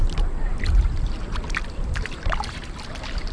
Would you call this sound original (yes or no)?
no